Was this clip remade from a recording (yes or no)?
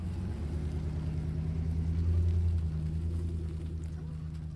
no